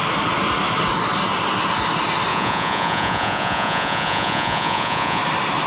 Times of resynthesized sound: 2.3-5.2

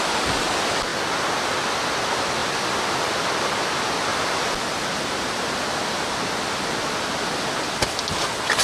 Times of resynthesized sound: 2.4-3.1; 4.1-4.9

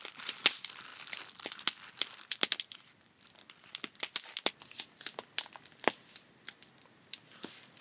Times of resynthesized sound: none